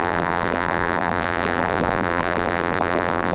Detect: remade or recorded remade